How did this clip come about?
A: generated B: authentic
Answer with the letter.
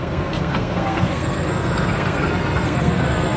A